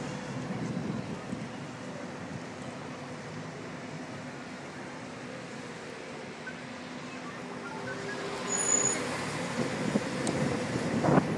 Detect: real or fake real